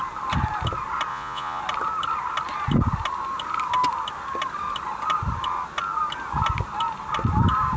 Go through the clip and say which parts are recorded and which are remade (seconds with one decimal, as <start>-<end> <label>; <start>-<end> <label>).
0.0-1.1 recorded; 1.1-1.6 remade; 1.6-7.8 recorded